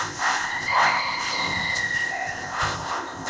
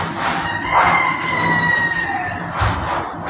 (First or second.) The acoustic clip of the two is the second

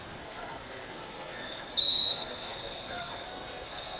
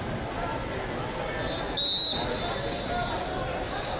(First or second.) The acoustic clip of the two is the second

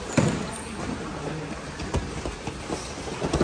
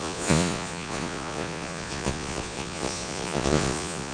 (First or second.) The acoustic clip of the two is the first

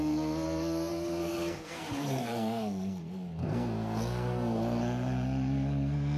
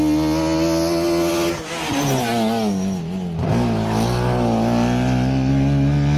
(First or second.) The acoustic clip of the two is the second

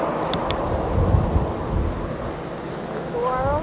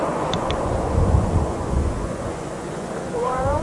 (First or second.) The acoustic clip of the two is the first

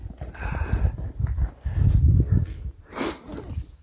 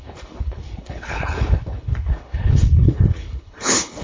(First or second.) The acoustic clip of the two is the first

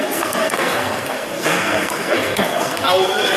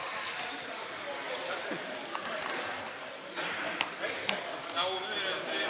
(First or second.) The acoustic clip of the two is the second